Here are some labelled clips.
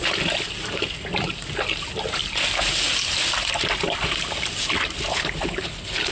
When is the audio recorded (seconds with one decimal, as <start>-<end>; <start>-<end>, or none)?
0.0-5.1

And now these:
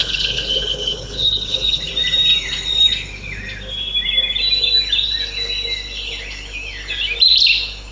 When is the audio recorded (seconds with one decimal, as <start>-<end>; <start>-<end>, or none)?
1.9-7.9

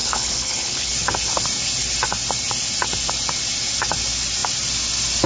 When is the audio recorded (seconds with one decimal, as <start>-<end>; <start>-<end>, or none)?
0.9-5.3

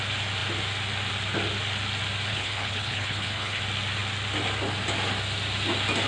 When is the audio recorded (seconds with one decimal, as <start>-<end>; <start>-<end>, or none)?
0.0-2.3; 3.6-6.1

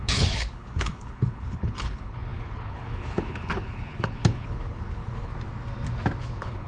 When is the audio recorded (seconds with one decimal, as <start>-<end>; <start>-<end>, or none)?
5.3-6.2

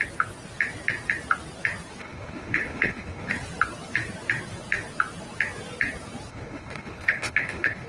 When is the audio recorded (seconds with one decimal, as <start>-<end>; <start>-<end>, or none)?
0.0-2.0; 3.3-6.3

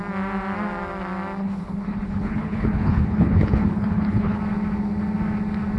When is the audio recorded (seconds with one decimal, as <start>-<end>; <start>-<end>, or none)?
0.0-1.4; 4.4-5.8